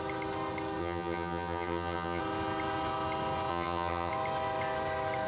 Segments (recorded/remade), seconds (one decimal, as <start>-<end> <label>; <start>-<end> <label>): 0.0-0.8 recorded; 0.8-2.2 remade; 2.2-3.5 recorded; 3.5-4.1 remade; 4.1-5.3 recorded